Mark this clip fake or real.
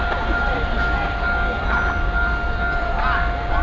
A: real